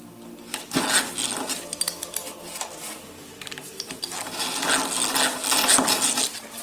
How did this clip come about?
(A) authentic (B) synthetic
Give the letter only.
A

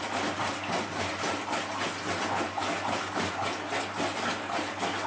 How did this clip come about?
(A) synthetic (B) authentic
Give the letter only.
B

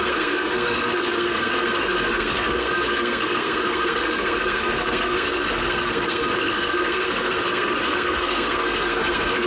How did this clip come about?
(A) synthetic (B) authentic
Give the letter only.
A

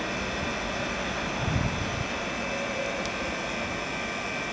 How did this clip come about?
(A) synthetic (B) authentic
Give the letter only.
B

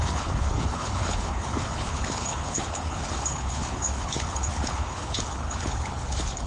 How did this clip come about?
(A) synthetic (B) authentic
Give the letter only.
A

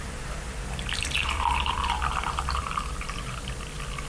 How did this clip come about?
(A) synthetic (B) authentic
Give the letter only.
A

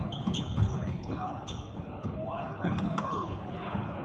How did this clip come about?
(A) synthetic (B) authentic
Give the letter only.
A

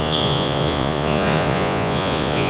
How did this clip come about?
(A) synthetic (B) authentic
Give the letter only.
A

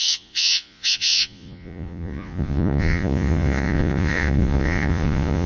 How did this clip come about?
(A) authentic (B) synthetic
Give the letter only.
B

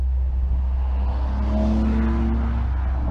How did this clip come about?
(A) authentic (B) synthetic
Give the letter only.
A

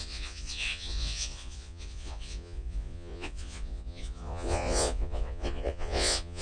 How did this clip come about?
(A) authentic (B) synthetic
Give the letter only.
B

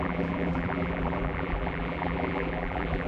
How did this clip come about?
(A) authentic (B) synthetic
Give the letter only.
B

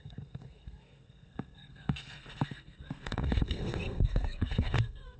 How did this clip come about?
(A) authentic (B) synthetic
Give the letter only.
B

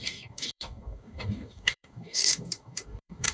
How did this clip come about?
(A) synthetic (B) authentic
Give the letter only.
A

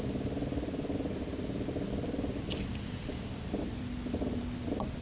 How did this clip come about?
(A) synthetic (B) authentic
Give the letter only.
A